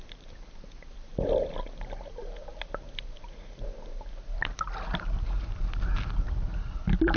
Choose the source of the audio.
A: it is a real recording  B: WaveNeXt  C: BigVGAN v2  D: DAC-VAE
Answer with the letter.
A